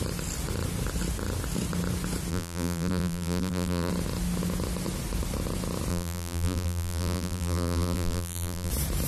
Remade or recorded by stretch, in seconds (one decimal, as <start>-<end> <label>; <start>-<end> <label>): 0.0-2.3 recorded; 2.3-3.9 remade; 3.9-5.9 recorded; 5.9-8.7 remade; 8.7-9.1 recorded